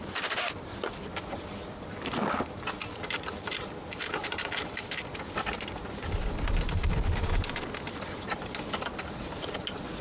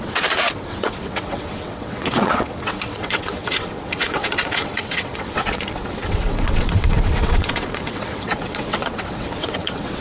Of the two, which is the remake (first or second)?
second